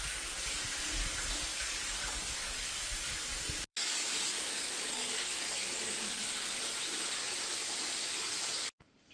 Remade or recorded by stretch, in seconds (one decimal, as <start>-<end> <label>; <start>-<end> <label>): 0.0-1.5 recorded; 1.5-2.8 remade; 2.8-3.7 recorded; 3.7-6.6 remade; 6.6-9.1 recorded